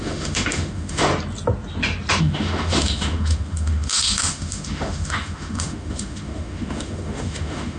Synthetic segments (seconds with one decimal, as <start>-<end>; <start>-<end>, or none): 0.0-1.1; 2.2-7.8